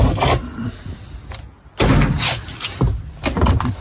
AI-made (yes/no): no